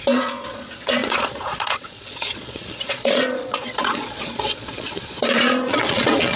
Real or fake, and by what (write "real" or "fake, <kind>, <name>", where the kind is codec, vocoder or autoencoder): fake, vocoder, Vocos